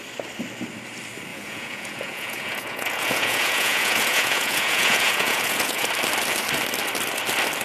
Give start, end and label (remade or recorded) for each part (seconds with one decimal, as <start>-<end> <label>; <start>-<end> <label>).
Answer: 0.0-1.3 recorded; 1.3-5.9 remade; 5.9-7.6 recorded